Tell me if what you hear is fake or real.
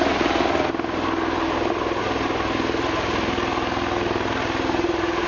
real